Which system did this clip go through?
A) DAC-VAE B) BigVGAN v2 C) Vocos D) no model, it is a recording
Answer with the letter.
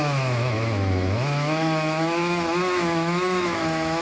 A